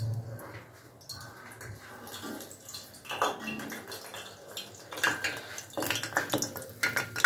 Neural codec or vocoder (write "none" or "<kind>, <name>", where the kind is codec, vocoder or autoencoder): none